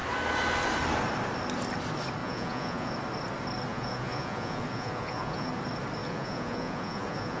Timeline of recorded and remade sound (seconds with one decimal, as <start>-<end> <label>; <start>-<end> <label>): 0.0-2.2 recorded; 2.2-2.9 remade; 2.9-3.7 recorded; 3.7-5.6 remade; 5.6-6.0 recorded; 6.0-7.4 remade